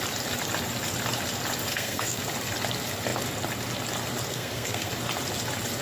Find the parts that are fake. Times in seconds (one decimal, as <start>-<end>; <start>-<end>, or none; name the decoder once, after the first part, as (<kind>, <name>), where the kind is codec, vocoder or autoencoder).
1.7-2.2 (codec, SNAC); 4.3-4.9